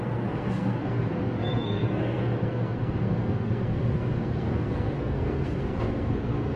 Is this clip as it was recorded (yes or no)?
no